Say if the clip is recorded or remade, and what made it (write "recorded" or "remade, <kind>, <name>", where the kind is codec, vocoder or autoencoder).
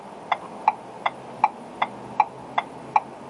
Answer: recorded